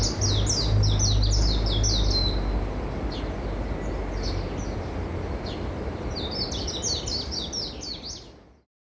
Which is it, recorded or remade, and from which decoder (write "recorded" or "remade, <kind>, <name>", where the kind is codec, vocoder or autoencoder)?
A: recorded